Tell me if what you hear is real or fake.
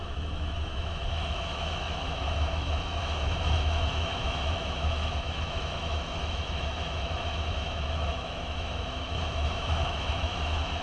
fake